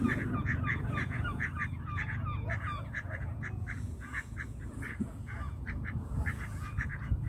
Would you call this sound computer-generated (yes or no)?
yes